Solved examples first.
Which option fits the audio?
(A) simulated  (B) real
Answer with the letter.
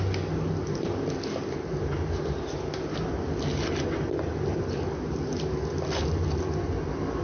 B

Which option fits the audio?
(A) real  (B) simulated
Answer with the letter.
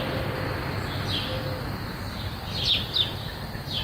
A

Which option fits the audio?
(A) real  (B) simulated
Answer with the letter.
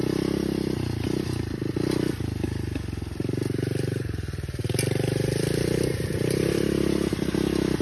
A